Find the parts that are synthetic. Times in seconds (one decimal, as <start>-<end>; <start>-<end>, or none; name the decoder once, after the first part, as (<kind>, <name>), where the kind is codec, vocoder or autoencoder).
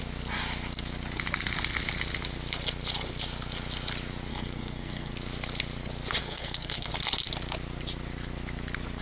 4.3-5.1 (codec, SNAC); 6.2-6.9